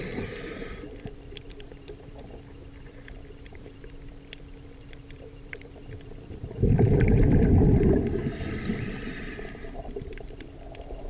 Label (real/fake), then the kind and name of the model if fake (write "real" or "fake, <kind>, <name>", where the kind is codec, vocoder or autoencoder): fake, vocoder, BigVGAN v2